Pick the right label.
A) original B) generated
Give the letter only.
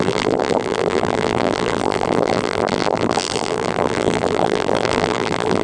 B